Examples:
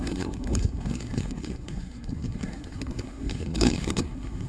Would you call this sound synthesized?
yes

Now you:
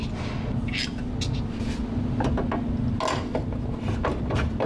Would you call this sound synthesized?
no